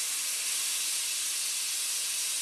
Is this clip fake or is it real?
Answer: real